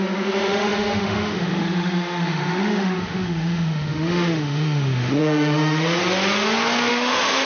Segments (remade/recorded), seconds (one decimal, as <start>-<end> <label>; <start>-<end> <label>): 0.0-6.0 remade; 6.0-6.9 recorded; 6.9-7.5 remade